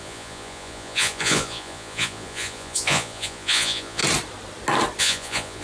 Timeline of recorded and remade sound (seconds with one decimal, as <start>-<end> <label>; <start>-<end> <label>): 0.0-4.0 remade; 4.0-5.0 recorded; 5.0-5.6 remade